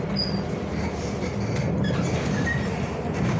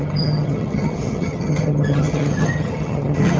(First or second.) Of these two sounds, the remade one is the second